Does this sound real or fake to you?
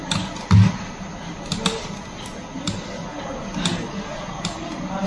real